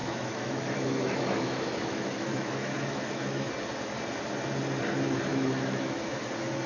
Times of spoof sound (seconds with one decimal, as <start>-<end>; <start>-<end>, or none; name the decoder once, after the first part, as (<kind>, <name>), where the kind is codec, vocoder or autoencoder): 0.0-3.5 (autoencoder, DAC-VAE); 5.3-6.2